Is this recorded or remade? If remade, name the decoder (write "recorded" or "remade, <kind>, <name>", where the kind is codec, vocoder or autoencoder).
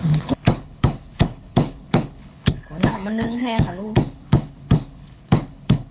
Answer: remade, codec, HILCodec